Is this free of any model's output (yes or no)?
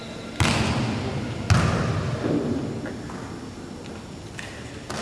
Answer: yes